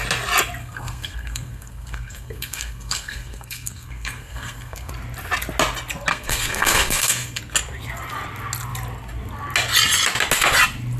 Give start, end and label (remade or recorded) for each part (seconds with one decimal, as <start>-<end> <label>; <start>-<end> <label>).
0.0-0.6 recorded; 0.6-4.9 remade; 4.9-6.1 recorded; 6.1-7.4 remade; 7.4-11.0 recorded